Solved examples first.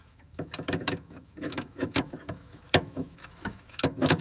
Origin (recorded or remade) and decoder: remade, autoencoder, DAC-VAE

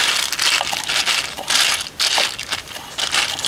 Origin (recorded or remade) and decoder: recorded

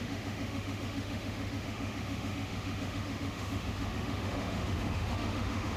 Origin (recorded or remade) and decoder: remade, autoencoder, DAC-VAE